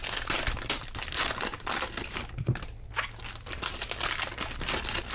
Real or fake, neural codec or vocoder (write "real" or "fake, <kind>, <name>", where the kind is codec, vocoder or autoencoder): real